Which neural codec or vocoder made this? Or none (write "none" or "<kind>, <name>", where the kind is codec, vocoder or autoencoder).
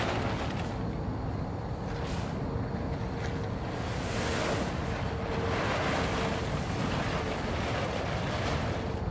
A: none